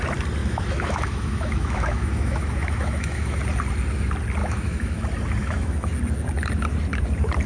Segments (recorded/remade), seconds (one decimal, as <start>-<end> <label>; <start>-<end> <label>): 0.0-0.4 recorded; 0.4-3.4 remade; 3.4-4.4 recorded; 4.4-5.0 remade; 5.0-5.4 recorded; 5.4-5.9 remade; 5.9-7.5 recorded

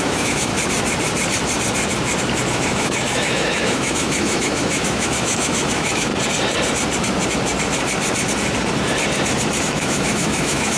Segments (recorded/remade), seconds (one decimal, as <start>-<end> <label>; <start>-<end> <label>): 0.0-0.5 remade; 0.5-2.5 recorded; 2.5-6.1 remade; 6.1-9.6 recorded; 9.6-10.8 remade

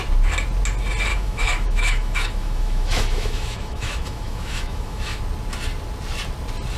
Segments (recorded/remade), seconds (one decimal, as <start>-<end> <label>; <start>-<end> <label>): 0.0-1.1 recorded; 1.1-5.2 remade; 5.2-6.8 recorded

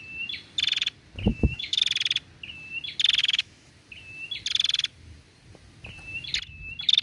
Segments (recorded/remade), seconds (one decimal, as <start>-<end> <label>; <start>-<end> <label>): 0.0-1.3 recorded; 1.3-1.8 remade; 1.8-3.2 recorded; 3.2-3.7 remade; 3.7-7.0 recorded

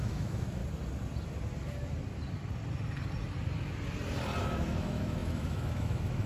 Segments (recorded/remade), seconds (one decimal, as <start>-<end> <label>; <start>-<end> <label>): 0.0-0.6 remade; 0.6-4.4 recorded; 4.4-6.3 remade

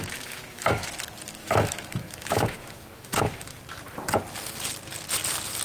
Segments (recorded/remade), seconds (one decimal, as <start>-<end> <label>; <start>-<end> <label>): 0.0-0.9 remade; 0.9-1.4 recorded; 1.4-3.6 remade; 3.6-5.6 recorded

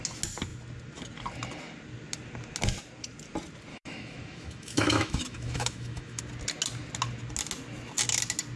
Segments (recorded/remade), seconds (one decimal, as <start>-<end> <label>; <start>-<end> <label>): 0.0-3.7 recorded; 3.7-6.2 remade; 6.2-8.6 recorded